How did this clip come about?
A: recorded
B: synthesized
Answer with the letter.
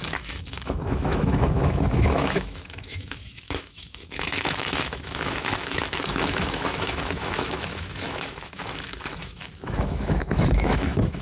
B